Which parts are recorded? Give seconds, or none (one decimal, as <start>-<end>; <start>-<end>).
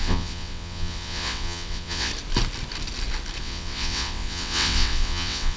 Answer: 2.1-3.4